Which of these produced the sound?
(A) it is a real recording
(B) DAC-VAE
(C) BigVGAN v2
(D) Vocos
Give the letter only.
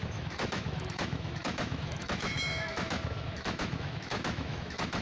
B